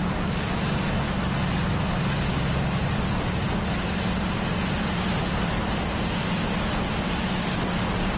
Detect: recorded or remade recorded